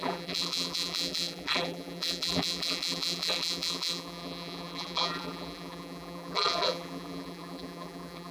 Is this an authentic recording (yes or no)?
no